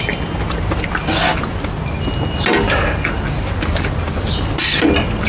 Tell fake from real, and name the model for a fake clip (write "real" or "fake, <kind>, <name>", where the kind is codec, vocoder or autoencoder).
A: real